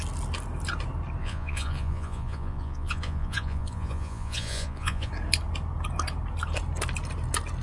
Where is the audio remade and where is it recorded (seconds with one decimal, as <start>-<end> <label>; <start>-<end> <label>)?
0.0-1.2 recorded; 1.2-5.1 remade; 5.1-7.6 recorded